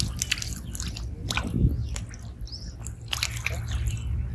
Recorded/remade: recorded